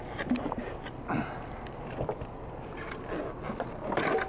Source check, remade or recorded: recorded